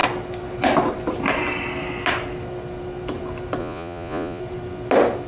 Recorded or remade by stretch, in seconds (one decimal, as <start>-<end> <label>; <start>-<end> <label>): 0.0-3.6 recorded; 3.6-4.4 remade; 4.4-5.3 recorded